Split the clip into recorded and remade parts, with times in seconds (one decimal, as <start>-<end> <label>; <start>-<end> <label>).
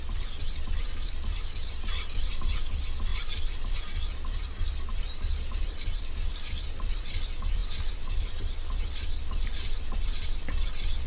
0.0-11.1 recorded